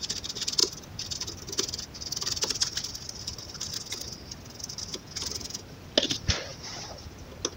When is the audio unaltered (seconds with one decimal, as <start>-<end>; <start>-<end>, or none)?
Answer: 0.0-4.9; 5.6-7.6